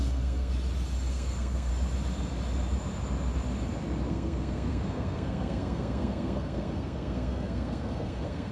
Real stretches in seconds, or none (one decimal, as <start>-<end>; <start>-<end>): 0.5-1.1; 1.7-4.1